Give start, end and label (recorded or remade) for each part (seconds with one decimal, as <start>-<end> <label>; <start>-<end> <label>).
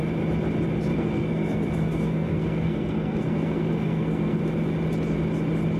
0.0-0.9 recorded; 0.9-4.4 remade; 4.4-5.8 recorded